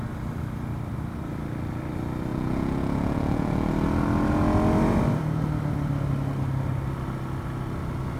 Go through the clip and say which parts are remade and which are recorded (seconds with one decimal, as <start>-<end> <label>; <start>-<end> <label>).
0.0-2.3 recorded; 2.3-3.7 remade; 3.7-8.2 recorded